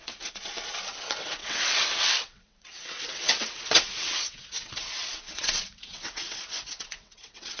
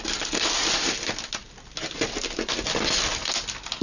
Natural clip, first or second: second